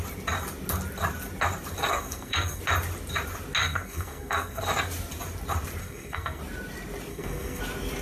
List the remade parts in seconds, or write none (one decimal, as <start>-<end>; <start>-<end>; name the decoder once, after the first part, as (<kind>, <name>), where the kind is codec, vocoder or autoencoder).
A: 1.9-2.6 (codec, SNAC); 3.6-4.6; 5.8-6.4; 7.1-7.6

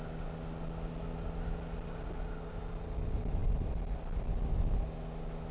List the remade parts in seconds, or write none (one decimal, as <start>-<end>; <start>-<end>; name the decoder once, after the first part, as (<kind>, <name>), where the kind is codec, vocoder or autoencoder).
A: none

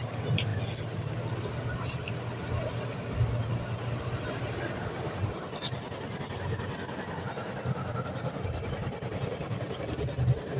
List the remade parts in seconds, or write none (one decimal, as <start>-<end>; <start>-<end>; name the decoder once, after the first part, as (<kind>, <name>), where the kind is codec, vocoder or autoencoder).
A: none

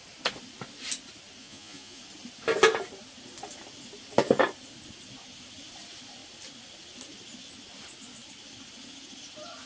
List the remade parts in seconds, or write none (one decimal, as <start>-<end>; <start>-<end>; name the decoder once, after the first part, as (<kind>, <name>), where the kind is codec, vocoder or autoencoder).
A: 1.4-2.0 (vocoder, Vocos)